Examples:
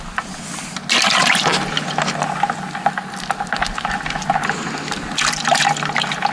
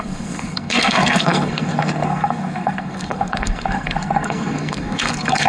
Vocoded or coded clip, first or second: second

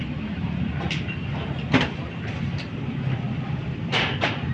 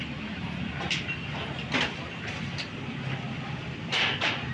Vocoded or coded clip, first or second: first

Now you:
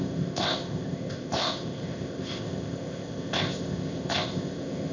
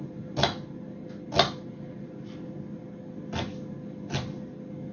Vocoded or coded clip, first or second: first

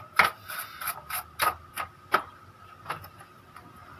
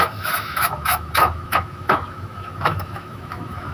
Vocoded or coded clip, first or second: second